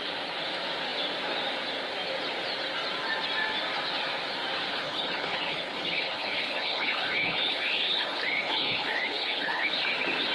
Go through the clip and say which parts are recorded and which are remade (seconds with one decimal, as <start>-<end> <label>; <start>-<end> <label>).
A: 0.0-4.7 recorded; 4.7-9.7 remade; 9.7-10.3 recorded